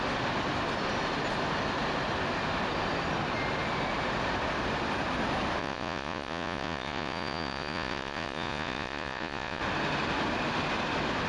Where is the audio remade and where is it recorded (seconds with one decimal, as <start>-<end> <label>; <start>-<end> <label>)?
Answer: 0.0-5.6 recorded; 5.6-9.6 remade; 9.6-11.3 recorded